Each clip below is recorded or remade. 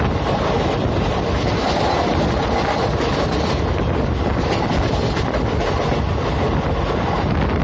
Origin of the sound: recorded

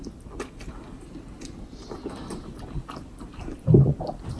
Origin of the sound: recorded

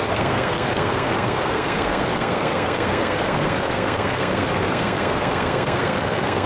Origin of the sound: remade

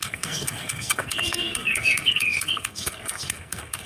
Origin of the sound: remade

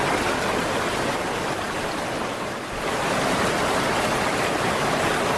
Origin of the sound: recorded